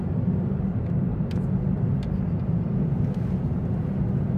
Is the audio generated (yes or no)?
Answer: no